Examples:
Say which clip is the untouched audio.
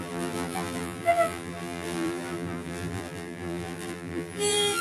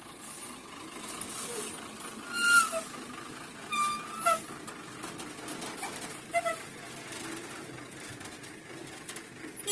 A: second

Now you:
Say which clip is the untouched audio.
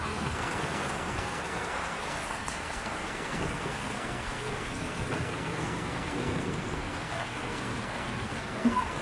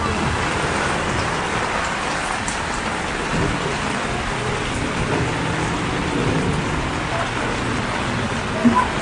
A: second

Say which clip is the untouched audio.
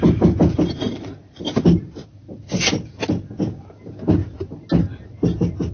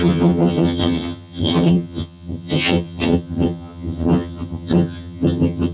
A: first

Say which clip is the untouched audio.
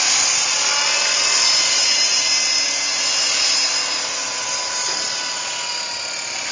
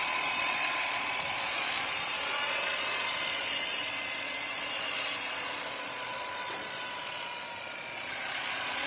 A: first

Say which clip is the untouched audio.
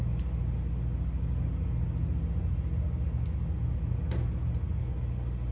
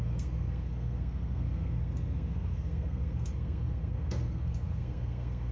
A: first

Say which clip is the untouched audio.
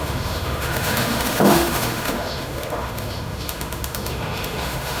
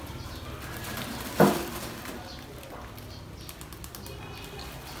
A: second